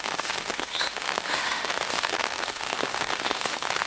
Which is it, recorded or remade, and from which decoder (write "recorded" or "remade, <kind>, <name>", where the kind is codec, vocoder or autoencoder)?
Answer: remade, autoencoder, DAC-VAE